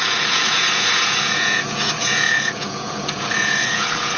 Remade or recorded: remade